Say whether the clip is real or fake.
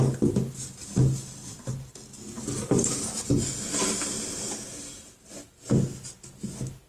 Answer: real